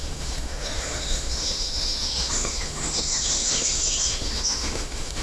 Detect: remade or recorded remade